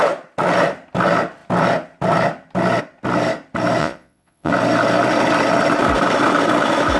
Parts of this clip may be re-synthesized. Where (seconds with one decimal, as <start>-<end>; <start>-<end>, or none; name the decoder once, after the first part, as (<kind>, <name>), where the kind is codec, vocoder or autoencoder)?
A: 3.8-4.5 (vocoder, Vocos)